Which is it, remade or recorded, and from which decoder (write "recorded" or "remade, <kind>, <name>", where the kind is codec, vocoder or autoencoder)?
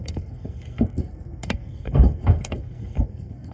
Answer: remade, codec, SNAC